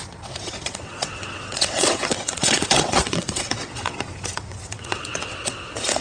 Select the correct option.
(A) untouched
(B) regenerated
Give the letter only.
B